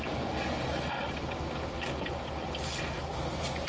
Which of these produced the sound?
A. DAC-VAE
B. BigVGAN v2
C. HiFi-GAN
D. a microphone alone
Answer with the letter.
D